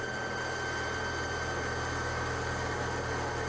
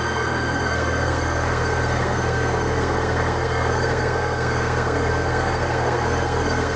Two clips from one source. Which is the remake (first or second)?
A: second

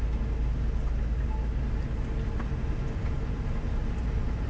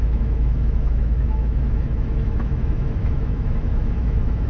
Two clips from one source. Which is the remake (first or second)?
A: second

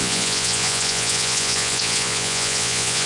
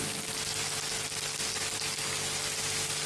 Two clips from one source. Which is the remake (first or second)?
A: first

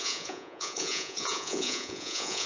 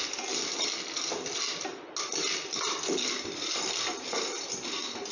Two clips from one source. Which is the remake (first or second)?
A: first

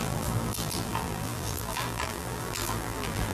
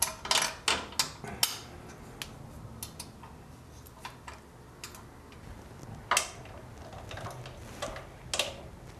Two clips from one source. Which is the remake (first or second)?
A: first